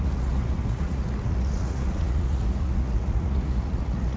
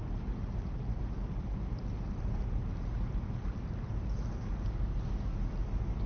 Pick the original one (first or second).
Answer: second